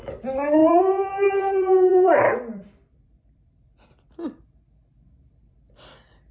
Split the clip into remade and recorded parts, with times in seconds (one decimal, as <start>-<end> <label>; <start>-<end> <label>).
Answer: 0.0-0.6 recorded; 0.6-4.4 remade; 4.4-6.3 recorded

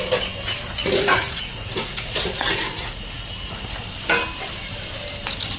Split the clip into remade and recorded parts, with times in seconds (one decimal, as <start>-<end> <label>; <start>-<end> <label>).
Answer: 0.0-0.7 recorded; 0.7-3.7 remade; 3.7-5.6 recorded